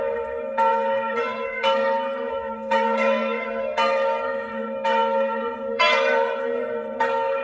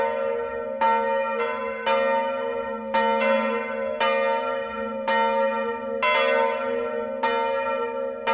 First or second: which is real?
second